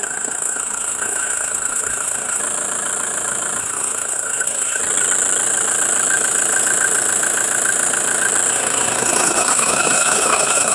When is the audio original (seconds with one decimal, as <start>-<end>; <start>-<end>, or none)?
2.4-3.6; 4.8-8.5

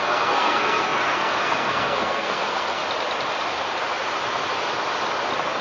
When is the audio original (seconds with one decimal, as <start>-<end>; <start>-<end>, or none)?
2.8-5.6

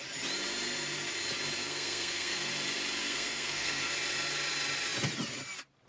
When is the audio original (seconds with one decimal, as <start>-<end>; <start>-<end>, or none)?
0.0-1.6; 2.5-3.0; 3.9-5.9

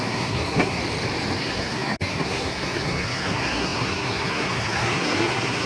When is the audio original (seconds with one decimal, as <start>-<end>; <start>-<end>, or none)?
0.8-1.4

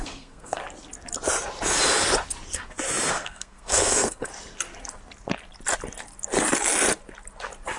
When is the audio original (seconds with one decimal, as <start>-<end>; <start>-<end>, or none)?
0.6-3.1; 4.3-7.8

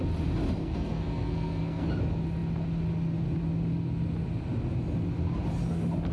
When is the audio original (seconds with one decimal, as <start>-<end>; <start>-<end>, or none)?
0.0-0.6; 1.9-6.1